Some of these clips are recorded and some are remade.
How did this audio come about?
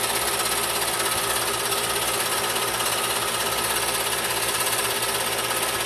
recorded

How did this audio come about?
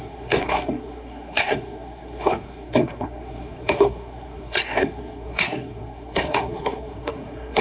remade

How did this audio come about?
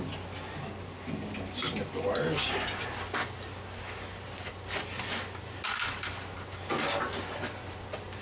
recorded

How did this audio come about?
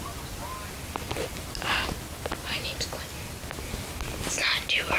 recorded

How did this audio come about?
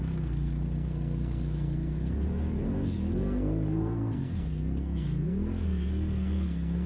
remade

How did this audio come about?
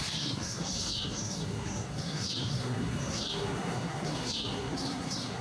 remade